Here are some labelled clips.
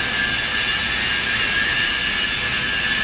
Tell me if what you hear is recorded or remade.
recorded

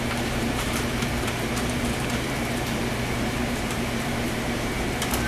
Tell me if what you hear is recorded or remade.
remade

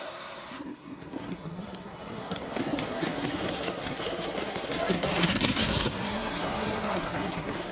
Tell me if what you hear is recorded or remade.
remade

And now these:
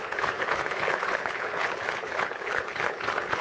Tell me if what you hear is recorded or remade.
remade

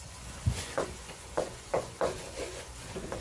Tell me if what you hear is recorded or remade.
remade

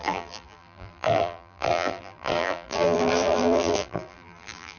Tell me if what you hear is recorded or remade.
remade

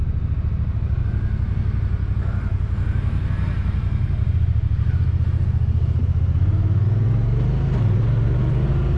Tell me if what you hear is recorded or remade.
recorded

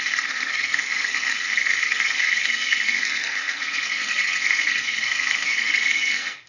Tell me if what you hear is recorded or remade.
remade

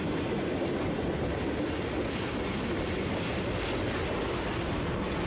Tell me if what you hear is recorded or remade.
recorded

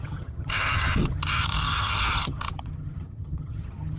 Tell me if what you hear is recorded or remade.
remade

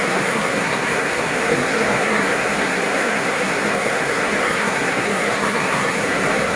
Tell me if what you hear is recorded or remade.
remade